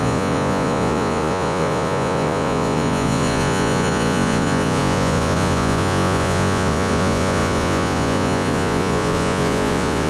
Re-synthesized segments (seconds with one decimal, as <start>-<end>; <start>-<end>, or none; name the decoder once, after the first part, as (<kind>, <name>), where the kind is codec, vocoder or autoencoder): 0.0-10.1 (vocoder, Vocos)